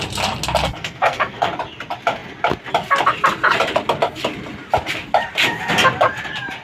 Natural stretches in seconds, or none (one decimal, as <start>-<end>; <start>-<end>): 0.0-0.6; 1.5-6.6